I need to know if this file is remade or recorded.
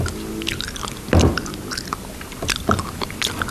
recorded